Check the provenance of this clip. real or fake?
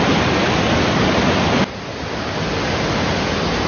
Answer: real